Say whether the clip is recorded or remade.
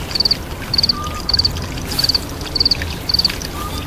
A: recorded